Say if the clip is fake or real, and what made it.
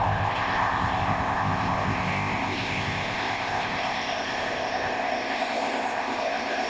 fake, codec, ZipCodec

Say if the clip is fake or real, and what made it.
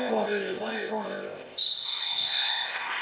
fake, codec, ZipCodec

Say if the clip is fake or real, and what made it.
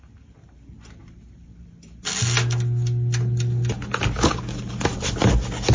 real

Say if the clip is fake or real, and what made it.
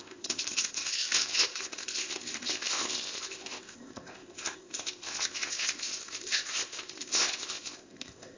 fake, codec, ZipCodec